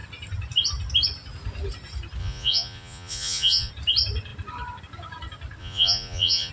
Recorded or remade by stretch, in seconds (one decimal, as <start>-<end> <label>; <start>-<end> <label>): 0.0-2.2 recorded; 2.2-3.7 remade; 3.7-5.6 recorded; 5.6-6.5 remade